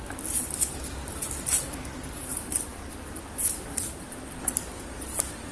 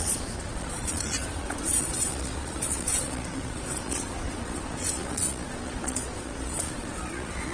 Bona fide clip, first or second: first